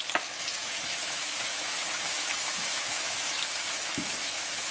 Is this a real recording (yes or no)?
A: no